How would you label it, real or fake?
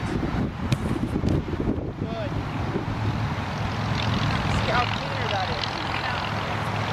real